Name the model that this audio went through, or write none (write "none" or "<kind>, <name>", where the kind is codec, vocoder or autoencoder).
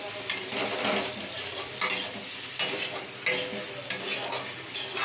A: none